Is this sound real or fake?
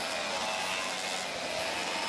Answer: real